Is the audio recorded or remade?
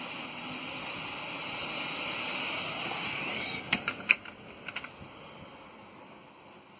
recorded